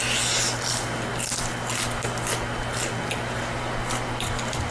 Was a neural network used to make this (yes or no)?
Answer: no